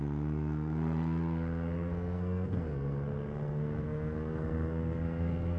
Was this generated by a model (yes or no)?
yes